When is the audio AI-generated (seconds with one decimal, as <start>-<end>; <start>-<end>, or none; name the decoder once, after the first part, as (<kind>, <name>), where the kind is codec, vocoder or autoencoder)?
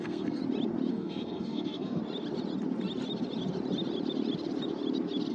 0.0-0.4 (codec, SNAC); 0.9-2.0